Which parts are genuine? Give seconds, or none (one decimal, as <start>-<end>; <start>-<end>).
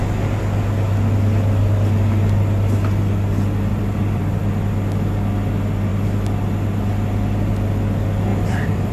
0.0-3.7; 4.4-8.3